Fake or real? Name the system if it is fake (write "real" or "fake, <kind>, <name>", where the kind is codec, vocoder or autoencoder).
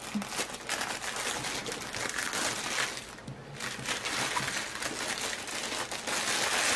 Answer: real